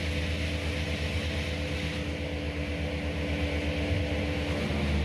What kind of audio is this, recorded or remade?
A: recorded